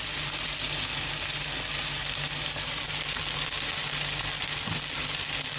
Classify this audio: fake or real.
real